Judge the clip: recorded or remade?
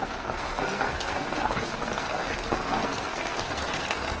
remade